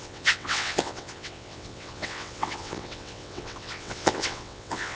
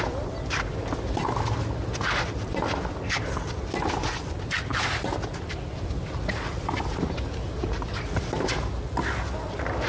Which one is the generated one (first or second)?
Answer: first